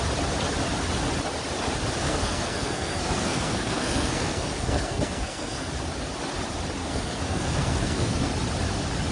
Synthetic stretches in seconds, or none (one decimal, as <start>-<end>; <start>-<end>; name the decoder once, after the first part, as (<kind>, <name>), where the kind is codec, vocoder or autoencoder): 2.0-5.7 (codec, SNAC); 6.8-8.3